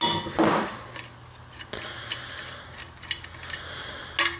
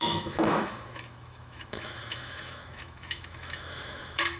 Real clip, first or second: first